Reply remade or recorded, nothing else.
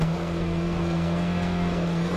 remade